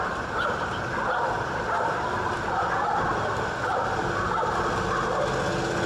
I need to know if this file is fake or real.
real